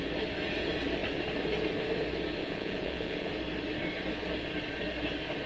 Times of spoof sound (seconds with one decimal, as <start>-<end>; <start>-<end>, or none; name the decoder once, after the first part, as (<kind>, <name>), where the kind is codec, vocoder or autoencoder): 2.4-3.3 (vocoder, Vocos)